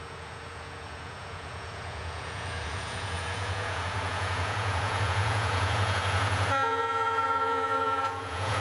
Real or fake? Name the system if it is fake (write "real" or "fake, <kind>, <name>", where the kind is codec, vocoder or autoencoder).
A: fake, vocoder, Vocos